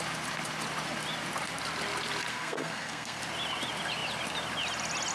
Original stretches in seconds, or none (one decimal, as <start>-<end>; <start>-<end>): 0.0-2.3; 3.2-5.1